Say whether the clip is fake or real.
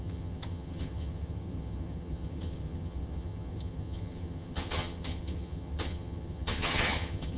fake